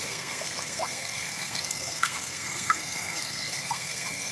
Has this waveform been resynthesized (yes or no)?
yes